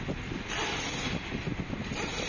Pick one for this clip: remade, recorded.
recorded